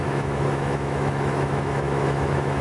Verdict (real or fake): fake